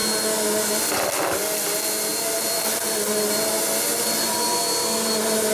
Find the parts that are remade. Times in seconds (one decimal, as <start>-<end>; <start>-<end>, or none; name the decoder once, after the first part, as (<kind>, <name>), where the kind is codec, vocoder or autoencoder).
none